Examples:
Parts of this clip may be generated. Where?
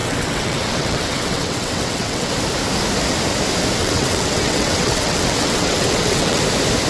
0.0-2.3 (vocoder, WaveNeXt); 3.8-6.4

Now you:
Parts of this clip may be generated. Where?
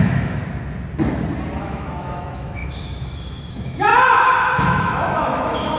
0.0-0.4 (autoencoder, DAC-VAE); 1.6-5.8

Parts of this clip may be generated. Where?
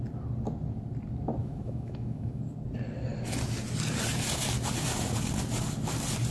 1.4-2.4 (autoencoder, DAC-VAE)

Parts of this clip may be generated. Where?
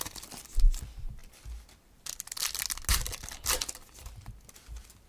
none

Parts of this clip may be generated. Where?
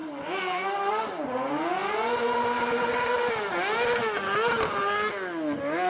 none